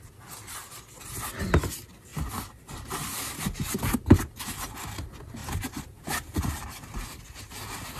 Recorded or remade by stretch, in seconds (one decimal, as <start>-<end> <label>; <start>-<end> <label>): 0.0-5.4 recorded; 5.4-7.2 remade; 7.2-8.0 recorded

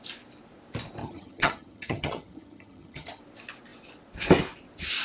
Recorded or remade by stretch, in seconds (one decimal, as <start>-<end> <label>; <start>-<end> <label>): 0.0-1.0 recorded; 1.0-3.2 remade; 3.2-5.0 recorded

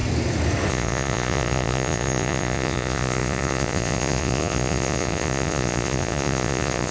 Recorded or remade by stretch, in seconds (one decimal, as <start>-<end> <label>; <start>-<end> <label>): 0.0-0.7 recorded; 0.7-6.9 remade